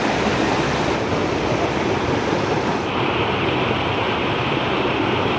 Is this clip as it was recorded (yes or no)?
yes